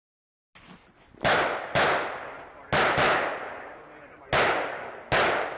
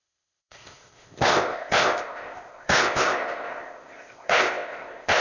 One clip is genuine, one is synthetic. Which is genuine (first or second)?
first